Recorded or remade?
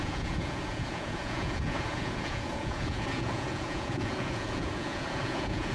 remade